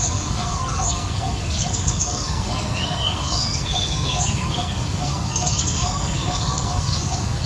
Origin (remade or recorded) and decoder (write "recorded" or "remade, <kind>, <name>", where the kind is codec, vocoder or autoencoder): remade, codec, SNAC